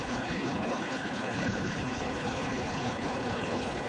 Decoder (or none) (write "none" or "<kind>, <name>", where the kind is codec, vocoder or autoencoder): codec, HILCodec